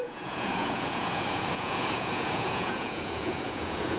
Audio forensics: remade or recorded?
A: remade